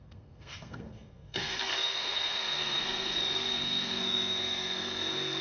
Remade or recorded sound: remade